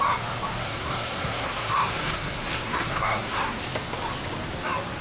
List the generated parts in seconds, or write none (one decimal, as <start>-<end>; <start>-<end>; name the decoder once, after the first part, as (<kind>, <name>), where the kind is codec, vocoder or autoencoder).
0.6-3.6 (codec, SNAC)